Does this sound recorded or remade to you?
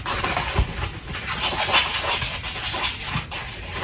recorded